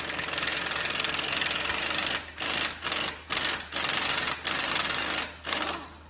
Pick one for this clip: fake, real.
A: real